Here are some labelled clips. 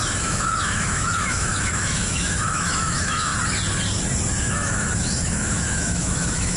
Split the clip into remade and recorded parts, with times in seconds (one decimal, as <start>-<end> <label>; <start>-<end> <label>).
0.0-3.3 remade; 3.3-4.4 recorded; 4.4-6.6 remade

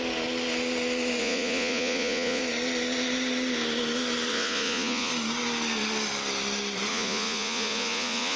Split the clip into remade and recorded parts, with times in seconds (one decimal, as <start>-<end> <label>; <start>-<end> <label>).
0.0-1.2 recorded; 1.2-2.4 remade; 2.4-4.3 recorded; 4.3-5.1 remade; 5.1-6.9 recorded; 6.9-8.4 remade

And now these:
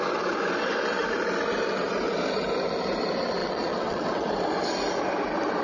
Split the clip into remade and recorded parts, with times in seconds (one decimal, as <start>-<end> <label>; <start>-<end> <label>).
0.0-3.4 recorded; 3.4-4.3 remade; 4.3-5.6 recorded